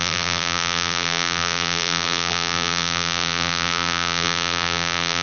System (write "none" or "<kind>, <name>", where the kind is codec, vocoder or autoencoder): vocoder, BigVGAN v2